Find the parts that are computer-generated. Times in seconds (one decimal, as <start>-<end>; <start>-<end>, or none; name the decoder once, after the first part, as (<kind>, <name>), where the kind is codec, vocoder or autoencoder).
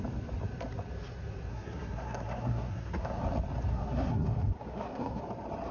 1.5-3.2 (codec, SNAC); 3.7-5.2